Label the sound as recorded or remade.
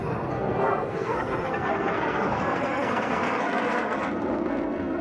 remade